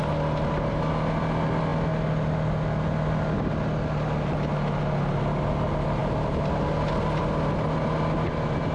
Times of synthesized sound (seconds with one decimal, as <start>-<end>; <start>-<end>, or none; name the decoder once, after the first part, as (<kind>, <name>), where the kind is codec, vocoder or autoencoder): none